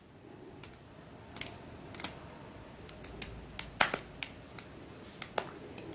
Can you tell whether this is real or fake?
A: real